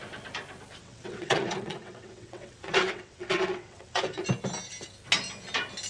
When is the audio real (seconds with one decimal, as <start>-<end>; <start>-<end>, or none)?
0.0-0.8; 4.2-5.9

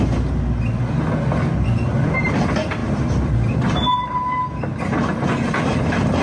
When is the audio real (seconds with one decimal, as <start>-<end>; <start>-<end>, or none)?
0.0-6.2

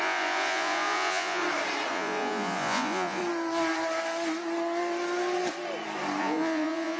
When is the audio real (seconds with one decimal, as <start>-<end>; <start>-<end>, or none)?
1.4-1.9; 3.2-6.2

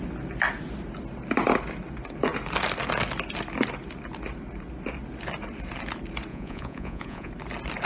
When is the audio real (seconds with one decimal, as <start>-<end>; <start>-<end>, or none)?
0.0-6.3; 7.3-7.9

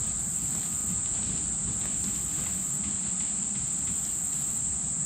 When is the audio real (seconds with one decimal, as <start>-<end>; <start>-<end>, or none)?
0.0-5.1

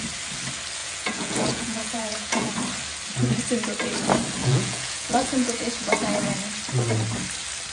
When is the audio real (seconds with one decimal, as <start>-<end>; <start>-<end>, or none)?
0.0-0.8; 2.5-4.4; 5.9-7.7

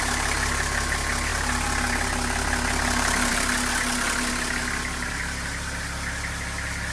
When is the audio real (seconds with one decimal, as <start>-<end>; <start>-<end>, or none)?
0.0-6.9